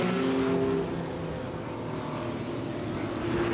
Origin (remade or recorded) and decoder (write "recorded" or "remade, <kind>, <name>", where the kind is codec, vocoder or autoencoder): recorded